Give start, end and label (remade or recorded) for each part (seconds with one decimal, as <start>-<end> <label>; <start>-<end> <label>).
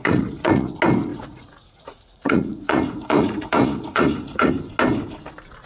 0.0-0.7 remade; 0.7-1.1 recorded; 1.1-4.5 remade; 4.5-5.7 recorded